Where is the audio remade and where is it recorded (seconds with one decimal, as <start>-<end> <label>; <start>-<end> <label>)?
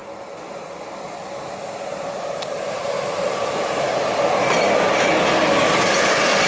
0.0-1.9 recorded; 1.9-4.1 remade; 4.1-6.5 recorded